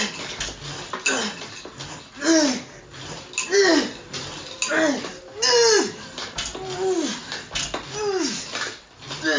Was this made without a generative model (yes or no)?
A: yes